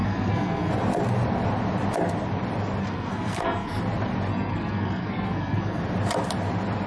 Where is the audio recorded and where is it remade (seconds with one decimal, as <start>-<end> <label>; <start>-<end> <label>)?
0.0-0.7 remade; 0.7-2.8 recorded; 2.8-3.8 remade; 3.8-4.3 recorded; 4.3-5.8 remade; 5.8-6.9 recorded